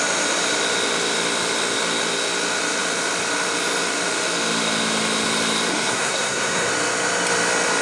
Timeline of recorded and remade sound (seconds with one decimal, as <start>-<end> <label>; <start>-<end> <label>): 0.0-5.7 recorded; 5.7-6.7 remade; 6.7-7.8 recorded